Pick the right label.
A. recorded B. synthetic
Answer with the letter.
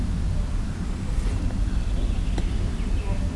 A